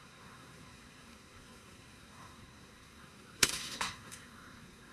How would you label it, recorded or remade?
remade